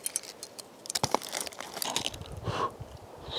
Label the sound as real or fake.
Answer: real